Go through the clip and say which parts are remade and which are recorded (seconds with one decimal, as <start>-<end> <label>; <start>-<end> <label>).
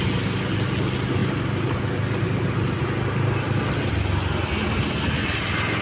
0.0-5.8 recorded